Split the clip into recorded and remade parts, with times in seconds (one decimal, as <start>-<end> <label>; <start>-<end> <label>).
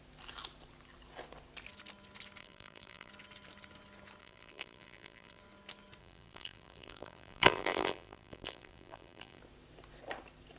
0.0-2.4 recorded; 2.4-3.1 remade; 3.1-4.2 recorded; 4.2-5.4 remade; 5.4-6.0 recorded; 6.0-9.4 remade; 9.4-10.6 recorded